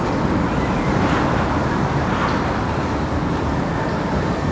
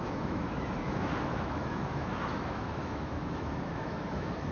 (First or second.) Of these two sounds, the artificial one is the second